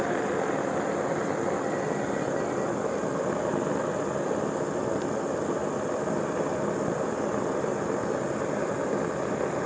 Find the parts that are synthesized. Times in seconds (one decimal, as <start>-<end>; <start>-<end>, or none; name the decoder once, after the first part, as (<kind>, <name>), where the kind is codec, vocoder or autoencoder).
none